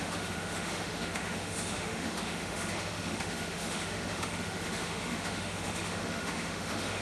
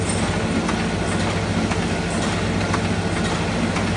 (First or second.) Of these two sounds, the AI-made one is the first